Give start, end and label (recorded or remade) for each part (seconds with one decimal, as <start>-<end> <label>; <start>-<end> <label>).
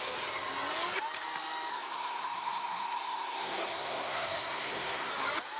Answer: 0.0-1.7 recorded; 1.7-5.1 remade; 5.1-5.6 recorded